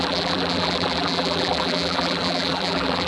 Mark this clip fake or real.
fake